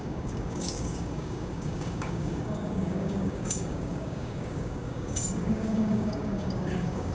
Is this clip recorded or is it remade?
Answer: remade